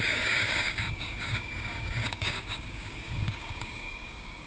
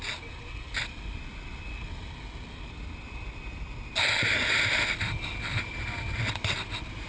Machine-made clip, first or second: first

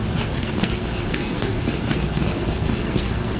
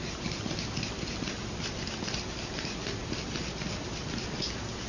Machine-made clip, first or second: first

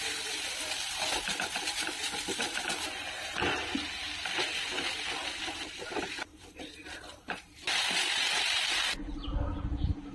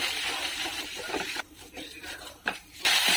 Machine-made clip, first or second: second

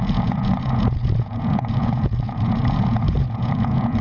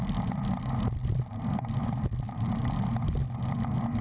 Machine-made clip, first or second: first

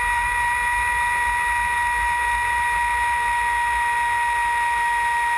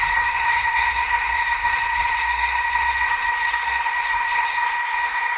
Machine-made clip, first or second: second